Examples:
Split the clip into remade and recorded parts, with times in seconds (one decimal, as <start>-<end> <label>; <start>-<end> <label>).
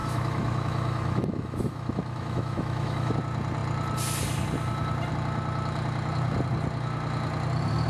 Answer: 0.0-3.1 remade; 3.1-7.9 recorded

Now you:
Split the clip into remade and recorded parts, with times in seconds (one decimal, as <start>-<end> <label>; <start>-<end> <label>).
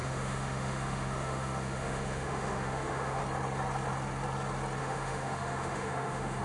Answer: 0.0-3.2 remade; 3.2-4.8 recorded; 4.8-6.4 remade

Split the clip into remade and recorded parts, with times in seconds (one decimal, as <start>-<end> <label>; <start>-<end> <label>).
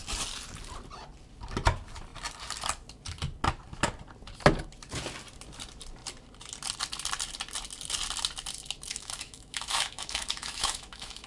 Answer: 0.0-8.9 recorded; 8.9-11.3 remade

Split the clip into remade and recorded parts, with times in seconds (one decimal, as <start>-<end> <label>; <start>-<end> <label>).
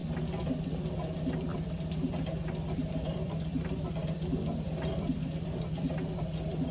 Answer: 0.0-6.7 recorded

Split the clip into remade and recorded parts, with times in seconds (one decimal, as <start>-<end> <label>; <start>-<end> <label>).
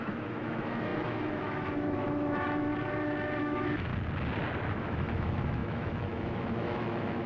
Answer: 0.0-2.7 remade; 2.7-3.4 recorded; 3.4-3.9 remade; 3.9-4.7 recorded; 4.7-7.3 remade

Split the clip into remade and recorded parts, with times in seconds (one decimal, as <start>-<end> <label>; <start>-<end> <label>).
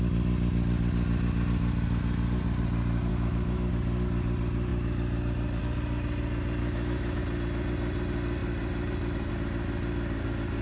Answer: 0.0-3.1 recorded; 3.1-3.7 remade; 3.7-6.6 recorded; 6.6-7.2 remade; 7.2-10.6 recorded